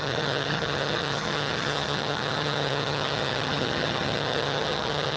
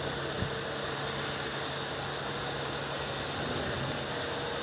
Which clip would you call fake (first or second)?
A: first